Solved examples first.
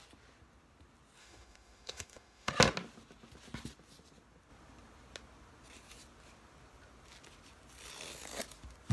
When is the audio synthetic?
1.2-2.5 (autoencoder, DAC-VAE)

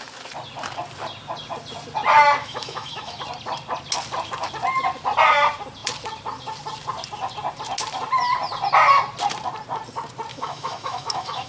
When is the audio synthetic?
2.4-3.2 (autoencoder, DAC-VAE); 10.3-11.5

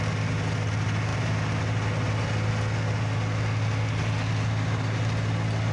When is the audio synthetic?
none